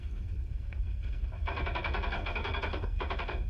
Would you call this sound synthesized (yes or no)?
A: yes